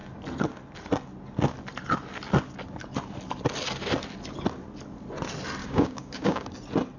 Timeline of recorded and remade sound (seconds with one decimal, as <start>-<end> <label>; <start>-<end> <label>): 0.0-5.6 recorded; 5.6-6.5 remade; 6.5-7.0 recorded